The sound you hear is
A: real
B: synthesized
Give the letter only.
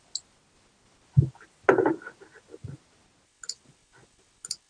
A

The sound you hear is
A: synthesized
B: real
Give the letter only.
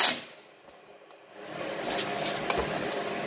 B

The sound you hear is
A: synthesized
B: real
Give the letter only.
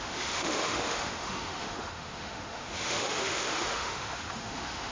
A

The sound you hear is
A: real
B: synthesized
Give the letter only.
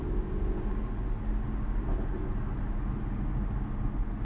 A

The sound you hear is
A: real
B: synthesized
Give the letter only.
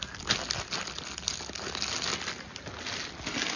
A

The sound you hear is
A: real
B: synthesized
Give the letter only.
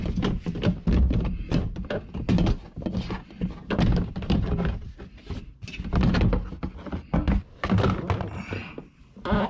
A